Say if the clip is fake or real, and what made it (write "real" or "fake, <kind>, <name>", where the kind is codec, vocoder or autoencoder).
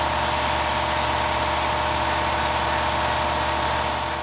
real